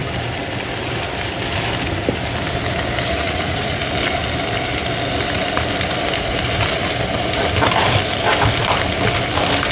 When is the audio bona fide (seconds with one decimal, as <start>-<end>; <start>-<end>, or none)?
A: 0.0-3.1; 3.8-9.7